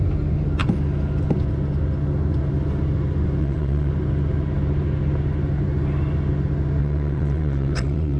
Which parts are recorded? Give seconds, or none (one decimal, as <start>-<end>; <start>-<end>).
0.0-3.4; 3.9-6.8